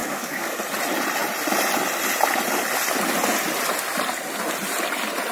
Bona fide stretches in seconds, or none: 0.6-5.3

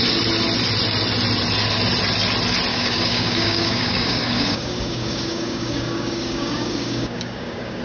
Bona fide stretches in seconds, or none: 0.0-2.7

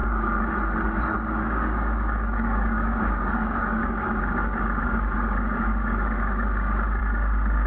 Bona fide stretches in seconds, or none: none

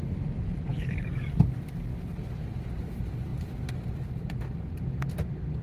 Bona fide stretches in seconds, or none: 0.0-0.7; 1.4-5.6

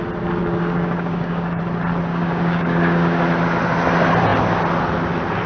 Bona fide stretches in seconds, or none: 0.0-0.4; 1.6-2.1; 3.2-5.5